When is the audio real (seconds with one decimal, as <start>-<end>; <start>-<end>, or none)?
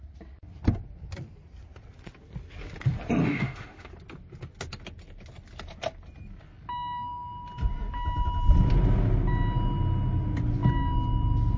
0.0-3.2; 3.9-11.6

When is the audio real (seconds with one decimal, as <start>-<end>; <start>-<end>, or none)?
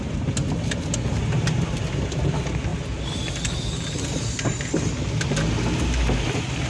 0.0-6.7